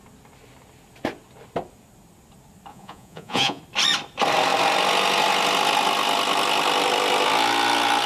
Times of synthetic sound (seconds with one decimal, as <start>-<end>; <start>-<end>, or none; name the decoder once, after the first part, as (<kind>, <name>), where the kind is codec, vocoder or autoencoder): 2.7-3.6 (vocoder, Vocos)